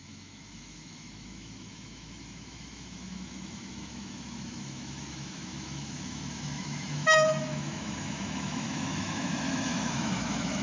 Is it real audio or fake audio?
fake